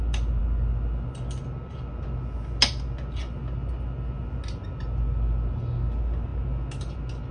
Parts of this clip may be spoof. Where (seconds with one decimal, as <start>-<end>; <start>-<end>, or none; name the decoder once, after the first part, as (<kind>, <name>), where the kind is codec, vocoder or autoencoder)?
none